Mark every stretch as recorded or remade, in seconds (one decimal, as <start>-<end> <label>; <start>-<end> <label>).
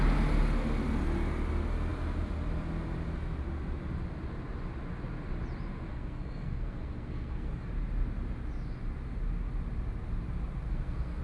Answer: 0.0-5.9 recorded; 5.9-7.7 remade; 7.7-10.6 recorded; 10.6-11.2 remade